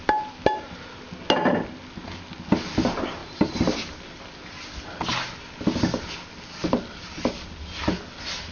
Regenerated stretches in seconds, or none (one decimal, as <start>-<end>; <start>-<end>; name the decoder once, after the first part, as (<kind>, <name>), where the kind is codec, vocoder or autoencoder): none